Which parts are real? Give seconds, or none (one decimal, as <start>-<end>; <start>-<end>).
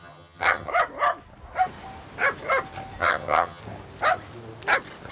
0.7-3.0; 3.6-5.1